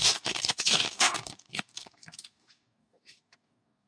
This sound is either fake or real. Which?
fake